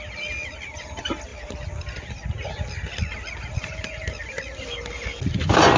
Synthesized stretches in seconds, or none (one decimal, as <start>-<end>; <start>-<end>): none